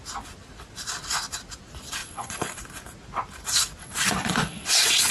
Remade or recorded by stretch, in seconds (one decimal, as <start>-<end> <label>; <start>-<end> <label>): 0.0-2.0 recorded; 2.0-2.6 remade; 2.6-3.8 recorded; 3.8-5.1 remade